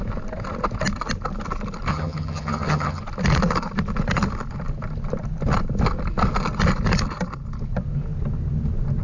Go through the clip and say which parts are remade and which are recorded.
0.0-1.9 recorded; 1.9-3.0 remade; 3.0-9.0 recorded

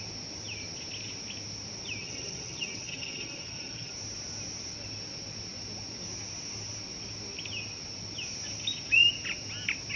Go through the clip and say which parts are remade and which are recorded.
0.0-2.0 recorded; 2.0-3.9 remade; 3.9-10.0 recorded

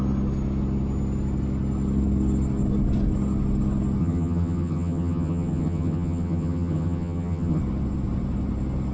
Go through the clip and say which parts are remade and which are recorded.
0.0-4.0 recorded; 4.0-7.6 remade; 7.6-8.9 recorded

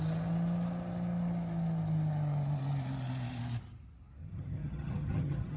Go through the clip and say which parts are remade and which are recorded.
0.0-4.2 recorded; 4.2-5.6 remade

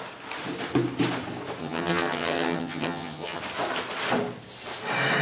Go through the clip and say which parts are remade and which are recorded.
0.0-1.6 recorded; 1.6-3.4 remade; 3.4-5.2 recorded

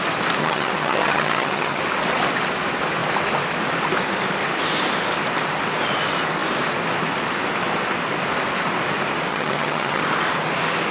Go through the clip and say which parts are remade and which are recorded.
0.0-0.4 recorded; 0.4-1.8 remade; 1.8-9.3 recorded; 9.3-10.0 remade; 10.0-10.9 recorded

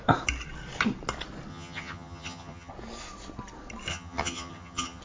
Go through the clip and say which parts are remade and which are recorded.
0.0-1.5 recorded; 1.5-2.7 remade; 2.7-3.9 recorded; 3.9-5.0 remade